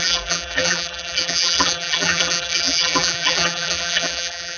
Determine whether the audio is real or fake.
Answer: fake